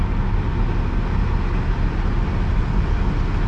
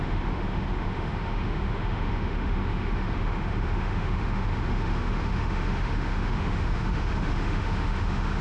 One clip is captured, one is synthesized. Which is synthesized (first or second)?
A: second